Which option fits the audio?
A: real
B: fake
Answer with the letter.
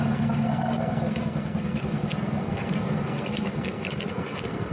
B